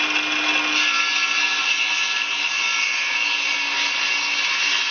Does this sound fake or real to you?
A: real